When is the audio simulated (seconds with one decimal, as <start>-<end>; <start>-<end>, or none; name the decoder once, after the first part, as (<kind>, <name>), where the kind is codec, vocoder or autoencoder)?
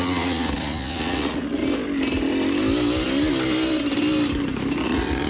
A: 0.0-1.6 (vocoder, Vocos); 4.8-5.3